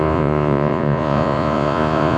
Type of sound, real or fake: fake